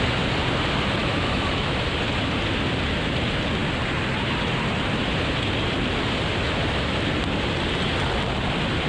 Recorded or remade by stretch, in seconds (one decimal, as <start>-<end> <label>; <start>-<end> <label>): 0.0-1.0 recorded; 1.0-1.8 remade; 1.8-8.9 recorded